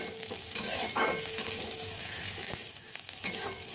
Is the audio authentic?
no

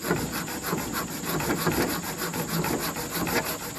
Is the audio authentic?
yes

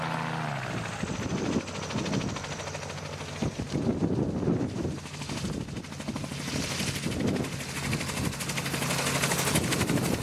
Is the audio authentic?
yes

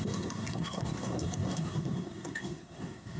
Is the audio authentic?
no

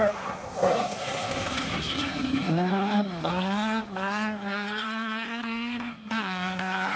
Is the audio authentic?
no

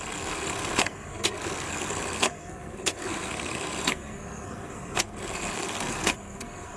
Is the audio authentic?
no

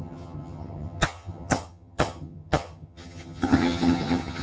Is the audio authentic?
no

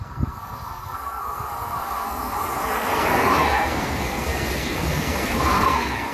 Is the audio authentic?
no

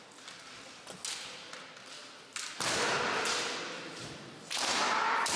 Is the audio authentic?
yes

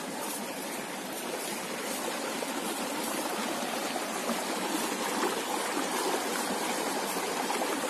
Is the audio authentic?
yes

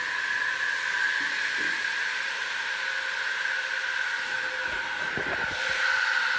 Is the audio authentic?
yes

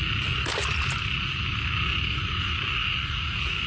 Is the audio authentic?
yes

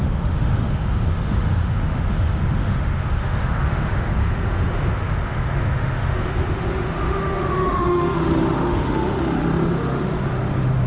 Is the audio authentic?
no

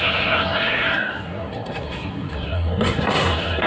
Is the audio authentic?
no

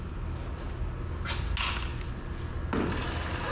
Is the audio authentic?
yes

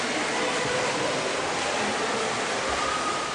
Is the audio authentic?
yes